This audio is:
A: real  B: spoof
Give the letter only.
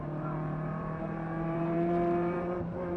B